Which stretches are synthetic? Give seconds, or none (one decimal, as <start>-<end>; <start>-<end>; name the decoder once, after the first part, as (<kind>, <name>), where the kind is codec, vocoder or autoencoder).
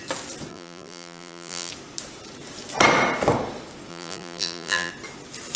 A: 0.5-1.7 (vocoder, BigVGAN v2); 3.9-4.9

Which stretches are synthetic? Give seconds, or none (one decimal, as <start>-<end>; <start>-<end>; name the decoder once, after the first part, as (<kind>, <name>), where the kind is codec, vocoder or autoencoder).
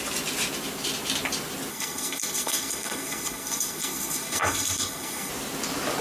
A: 1.7-5.3 (codec, SNAC)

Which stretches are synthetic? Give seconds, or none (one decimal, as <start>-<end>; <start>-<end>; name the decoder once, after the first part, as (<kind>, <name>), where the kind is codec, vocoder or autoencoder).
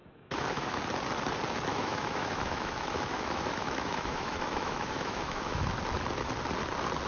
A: 0.0-0.8 (autoencoder, DAC-VAE); 1.7-5.7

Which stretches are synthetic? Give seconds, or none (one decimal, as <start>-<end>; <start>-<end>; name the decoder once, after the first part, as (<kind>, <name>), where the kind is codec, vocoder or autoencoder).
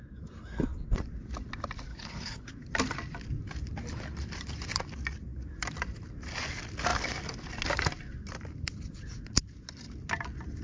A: 1.9-2.5 (codec, HILCodec)